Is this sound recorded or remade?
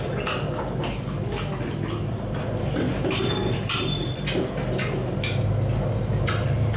recorded